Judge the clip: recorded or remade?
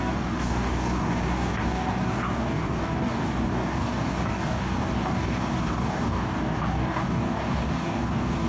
remade